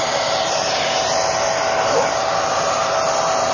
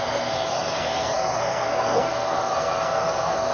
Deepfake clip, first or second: second